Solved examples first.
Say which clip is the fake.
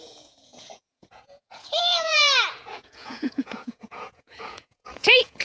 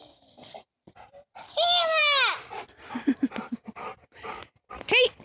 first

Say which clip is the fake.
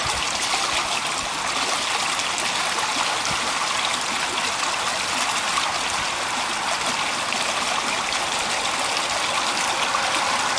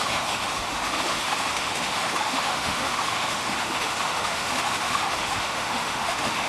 second